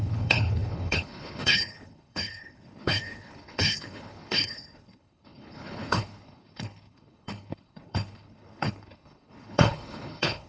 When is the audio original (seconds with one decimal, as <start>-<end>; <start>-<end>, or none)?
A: none